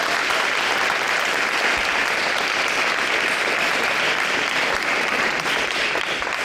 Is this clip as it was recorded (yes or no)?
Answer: yes